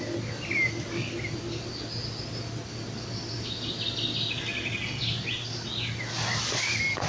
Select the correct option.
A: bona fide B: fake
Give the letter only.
A